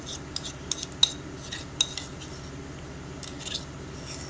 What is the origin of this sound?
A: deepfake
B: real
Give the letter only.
B